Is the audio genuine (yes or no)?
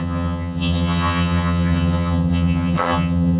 no